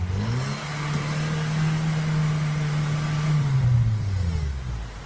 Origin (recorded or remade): recorded